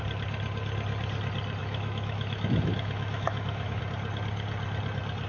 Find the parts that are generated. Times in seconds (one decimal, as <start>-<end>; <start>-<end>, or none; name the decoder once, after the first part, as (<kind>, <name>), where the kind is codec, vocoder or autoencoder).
1.6-3.8 (autoencoder, DAC-VAE)